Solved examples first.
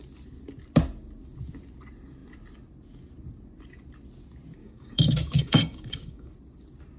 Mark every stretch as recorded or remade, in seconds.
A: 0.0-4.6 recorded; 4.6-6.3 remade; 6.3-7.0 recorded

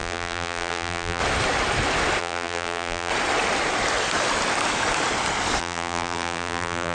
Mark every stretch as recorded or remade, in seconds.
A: 0.0-1.2 remade; 1.2-2.2 recorded; 2.2-3.1 remade; 3.1-5.6 recorded; 5.6-6.9 remade

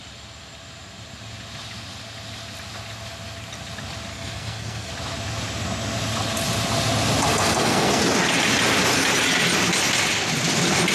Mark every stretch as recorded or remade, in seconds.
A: 0.0-4.1 recorded; 4.1-4.9 remade; 4.9-7.3 recorded; 7.3-8.0 remade; 8.0-10.9 recorded

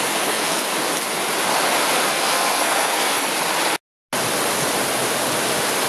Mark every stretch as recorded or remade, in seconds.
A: 0.0-0.7 remade; 0.7-2.1 recorded; 2.1-3.3 remade; 3.3-5.9 recorded

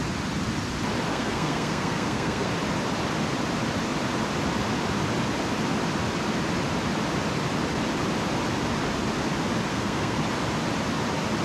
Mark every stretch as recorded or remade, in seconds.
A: 0.0-1.1 recorded; 1.1-2.5 remade; 2.5-9.7 recorded; 9.7-10.2 remade; 10.2-11.4 recorded

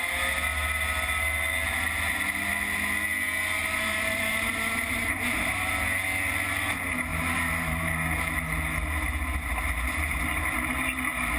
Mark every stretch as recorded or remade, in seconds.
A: 0.0-3.6 recorded; 3.6-5.7 remade; 5.7-7.1 recorded; 7.1-7.9 remade; 7.9-11.4 recorded

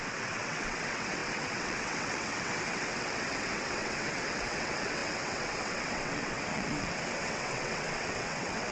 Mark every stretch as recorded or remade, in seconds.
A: 0.0-8.7 remade